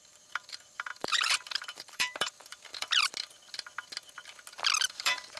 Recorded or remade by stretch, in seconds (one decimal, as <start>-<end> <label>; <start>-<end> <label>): 0.0-2.7 remade; 2.7-4.9 recorded; 4.9-5.4 remade